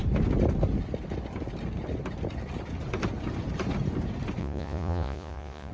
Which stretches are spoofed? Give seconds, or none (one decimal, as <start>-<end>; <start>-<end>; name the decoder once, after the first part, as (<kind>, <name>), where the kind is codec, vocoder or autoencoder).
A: 4.4-5.7 (vocoder, Vocos)